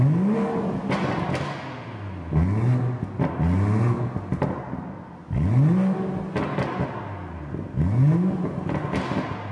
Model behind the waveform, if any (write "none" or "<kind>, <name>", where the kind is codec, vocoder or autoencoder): none